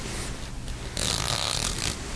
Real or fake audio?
real